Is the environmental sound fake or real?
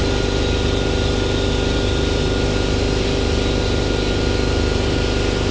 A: real